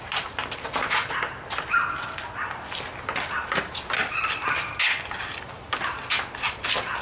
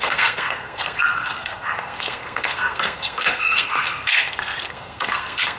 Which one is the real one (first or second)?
first